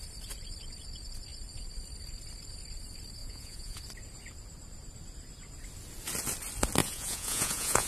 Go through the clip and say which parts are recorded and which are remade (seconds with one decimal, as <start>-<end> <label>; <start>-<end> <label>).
0.0-3.2 recorded; 3.2-3.8 remade; 3.8-6.8 recorded; 6.8-7.9 remade